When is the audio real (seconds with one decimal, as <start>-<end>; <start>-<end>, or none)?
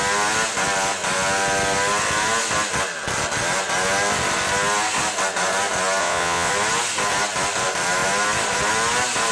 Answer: 0.0-6.0; 6.5-9.3